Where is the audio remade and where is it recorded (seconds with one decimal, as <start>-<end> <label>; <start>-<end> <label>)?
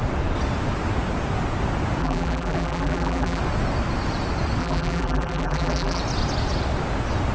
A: 0.0-2.0 recorded; 2.0-3.4 remade; 3.4-4.6 recorded; 4.6-6.0 remade; 6.0-7.3 recorded